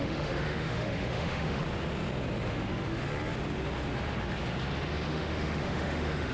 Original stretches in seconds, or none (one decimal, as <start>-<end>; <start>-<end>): 1.6-2.5; 3.0-5.1

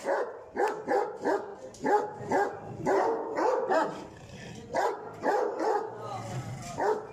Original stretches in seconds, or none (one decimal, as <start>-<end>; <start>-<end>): 0.0-7.1

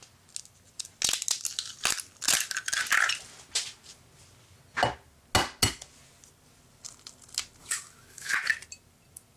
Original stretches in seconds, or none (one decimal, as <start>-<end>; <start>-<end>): 0.0-7.6; 8.5-9.4

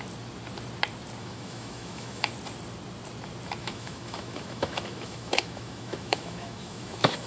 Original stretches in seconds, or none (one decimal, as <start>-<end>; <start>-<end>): 0.0-1.2; 2.3-3.6